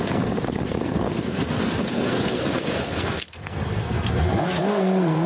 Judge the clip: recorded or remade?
remade